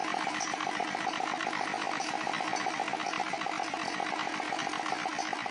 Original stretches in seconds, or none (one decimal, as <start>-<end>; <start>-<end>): 0.0-5.5